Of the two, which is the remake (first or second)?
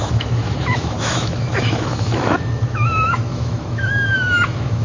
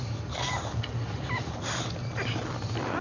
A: first